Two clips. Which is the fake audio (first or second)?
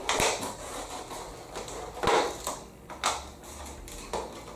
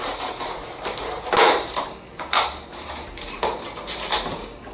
second